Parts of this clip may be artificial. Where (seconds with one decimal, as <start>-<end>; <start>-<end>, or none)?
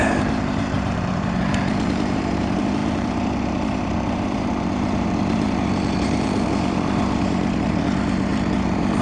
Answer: 0.0-9.0